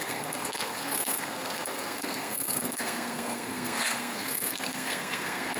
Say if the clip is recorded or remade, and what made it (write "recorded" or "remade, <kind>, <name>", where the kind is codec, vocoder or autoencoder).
remade, codec, SNAC